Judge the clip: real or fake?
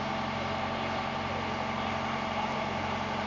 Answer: real